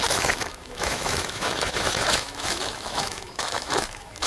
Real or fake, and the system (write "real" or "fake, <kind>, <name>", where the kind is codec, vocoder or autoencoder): fake, autoencoder, DAC-VAE